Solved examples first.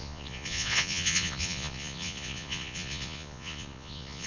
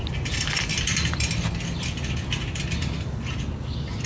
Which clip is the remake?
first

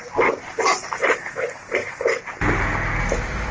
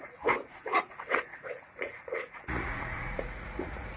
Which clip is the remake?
second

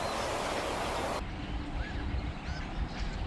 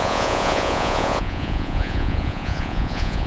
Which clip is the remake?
second